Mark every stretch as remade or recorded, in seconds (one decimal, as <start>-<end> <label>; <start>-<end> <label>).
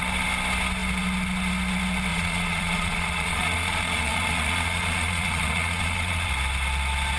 0.0-2.1 recorded; 2.1-6.3 remade; 6.3-7.2 recorded